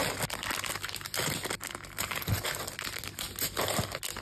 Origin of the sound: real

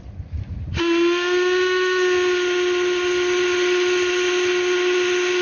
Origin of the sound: real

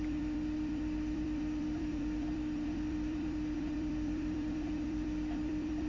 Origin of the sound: fake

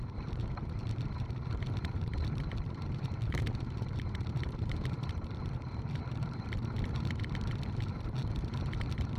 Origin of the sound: fake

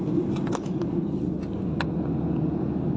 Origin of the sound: real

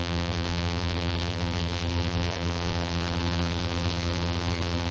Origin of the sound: fake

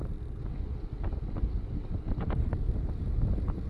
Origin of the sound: real